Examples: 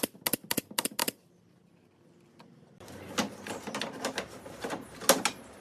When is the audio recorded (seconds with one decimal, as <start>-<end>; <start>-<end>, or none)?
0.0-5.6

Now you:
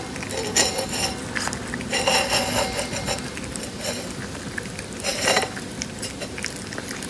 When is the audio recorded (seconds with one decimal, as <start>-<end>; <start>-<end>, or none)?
0.0-5.1; 5.7-7.1

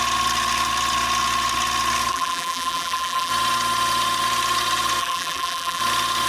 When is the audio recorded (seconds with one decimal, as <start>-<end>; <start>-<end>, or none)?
0.0-2.1; 3.3-5.0; 5.8-6.3